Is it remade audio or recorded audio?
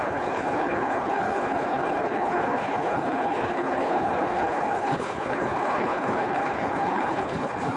remade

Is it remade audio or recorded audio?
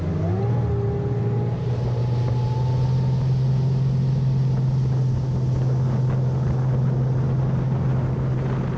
recorded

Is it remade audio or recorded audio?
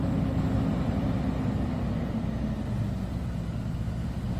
recorded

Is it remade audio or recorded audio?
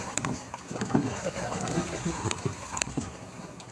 remade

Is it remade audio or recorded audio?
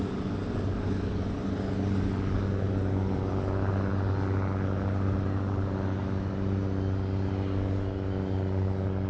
recorded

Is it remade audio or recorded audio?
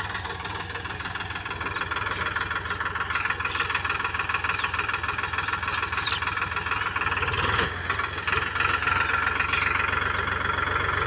recorded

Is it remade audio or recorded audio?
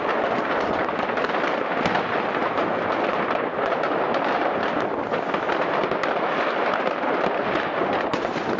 recorded